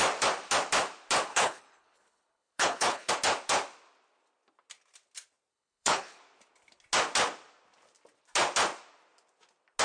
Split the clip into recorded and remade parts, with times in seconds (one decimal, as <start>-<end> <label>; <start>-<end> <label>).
0.0-1.3 recorded; 1.3-3.1 remade; 3.1-5.5 recorded; 5.5-6.2 remade; 6.2-9.8 recorded